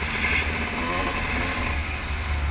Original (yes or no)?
yes